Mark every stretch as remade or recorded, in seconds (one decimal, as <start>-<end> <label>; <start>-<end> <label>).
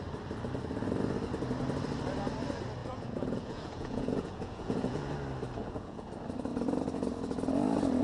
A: 0.0-2.8 recorded; 2.8-5.1 remade; 5.1-5.6 recorded; 5.6-6.1 remade; 6.1-8.0 recorded